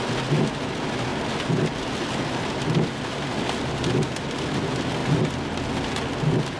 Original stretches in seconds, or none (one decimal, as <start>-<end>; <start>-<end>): 0.0-6.6